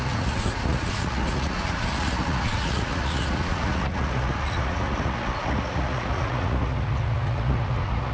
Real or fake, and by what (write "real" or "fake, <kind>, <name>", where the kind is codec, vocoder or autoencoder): fake, vocoder, Vocos